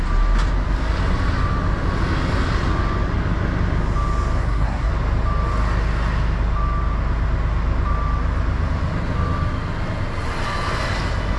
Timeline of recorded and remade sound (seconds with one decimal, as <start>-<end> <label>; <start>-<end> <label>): 0.0-4.4 recorded; 4.4-4.9 remade; 4.9-11.4 recorded